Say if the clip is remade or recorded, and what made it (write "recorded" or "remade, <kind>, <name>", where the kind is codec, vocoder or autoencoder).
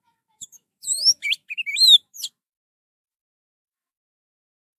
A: remade, autoencoder, DAC-VAE